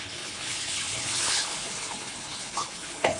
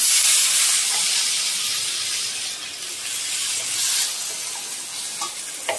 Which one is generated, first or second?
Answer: first